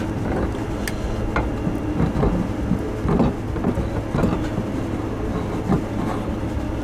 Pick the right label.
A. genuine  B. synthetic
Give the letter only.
A